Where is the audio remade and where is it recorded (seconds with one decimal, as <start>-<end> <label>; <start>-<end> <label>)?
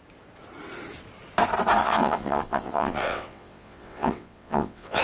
0.0-1.8 recorded; 1.8-5.0 remade